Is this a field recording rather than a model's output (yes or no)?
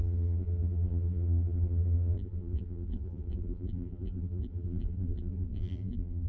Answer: no